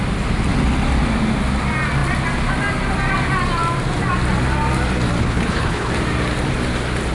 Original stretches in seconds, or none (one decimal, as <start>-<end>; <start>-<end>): 0.0-5.2; 5.9-7.1